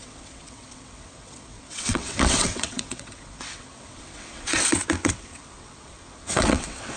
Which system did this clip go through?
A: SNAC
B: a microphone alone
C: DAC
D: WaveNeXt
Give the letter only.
D